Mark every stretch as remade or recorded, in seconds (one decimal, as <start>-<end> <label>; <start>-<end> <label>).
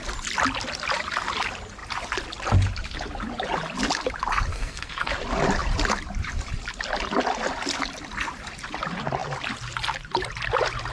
0.0-4.5 recorded; 4.5-5.1 remade; 5.1-10.9 recorded